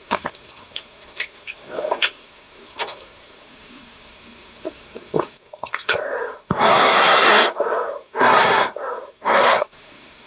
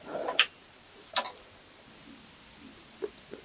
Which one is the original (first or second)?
second